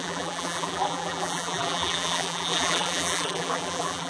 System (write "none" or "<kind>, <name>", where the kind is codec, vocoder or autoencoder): vocoder, BigVGAN v2